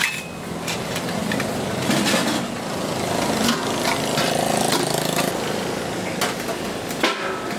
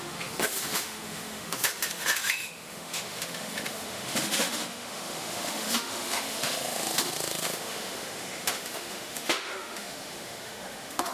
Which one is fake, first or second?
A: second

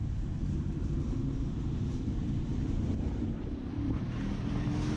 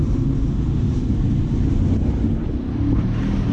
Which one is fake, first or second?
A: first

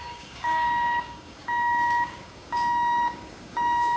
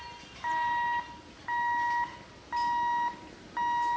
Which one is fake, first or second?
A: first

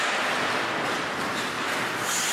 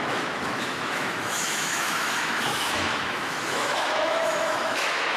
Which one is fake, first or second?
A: second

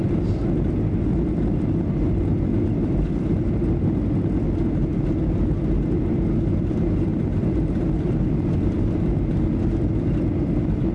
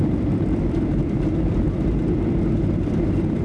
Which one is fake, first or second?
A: second